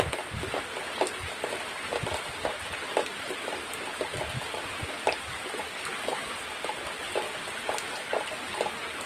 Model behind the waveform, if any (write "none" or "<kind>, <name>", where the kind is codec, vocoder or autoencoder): none